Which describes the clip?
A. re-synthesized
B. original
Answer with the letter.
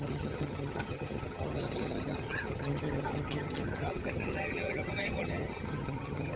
A